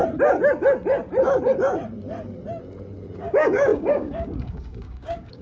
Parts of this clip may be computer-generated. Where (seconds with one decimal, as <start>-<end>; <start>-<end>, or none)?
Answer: 3.2-5.4